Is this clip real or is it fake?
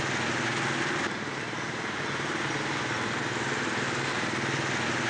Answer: real